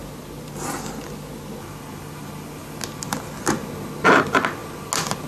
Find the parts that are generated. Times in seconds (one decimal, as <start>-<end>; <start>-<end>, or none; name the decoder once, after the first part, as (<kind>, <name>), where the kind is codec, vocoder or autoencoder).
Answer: none